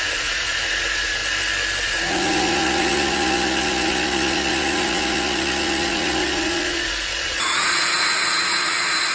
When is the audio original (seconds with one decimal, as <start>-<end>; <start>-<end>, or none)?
1.2-1.8